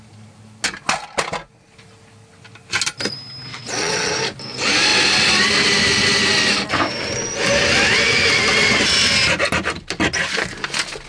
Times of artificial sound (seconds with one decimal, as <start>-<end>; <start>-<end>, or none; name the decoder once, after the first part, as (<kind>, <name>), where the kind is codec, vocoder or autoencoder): 3.5-4.1 (vocoder, WaveNeXt)